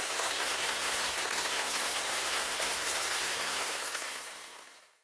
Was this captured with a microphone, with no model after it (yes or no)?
no